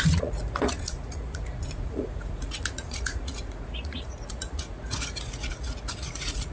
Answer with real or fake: fake